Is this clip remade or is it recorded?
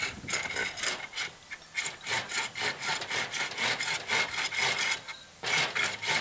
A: recorded